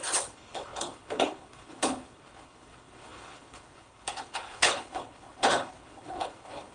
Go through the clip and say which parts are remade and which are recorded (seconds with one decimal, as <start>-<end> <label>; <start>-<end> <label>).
0.0-6.7 remade